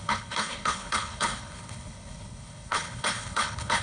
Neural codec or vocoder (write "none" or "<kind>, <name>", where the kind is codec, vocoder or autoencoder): codec, HILCodec